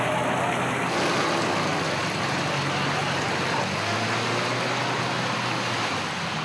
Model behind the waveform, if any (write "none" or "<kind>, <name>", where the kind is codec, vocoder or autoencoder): none